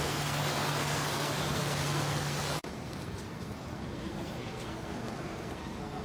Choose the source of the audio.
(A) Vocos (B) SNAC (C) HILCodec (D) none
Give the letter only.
B